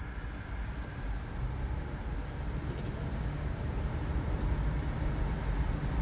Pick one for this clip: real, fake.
real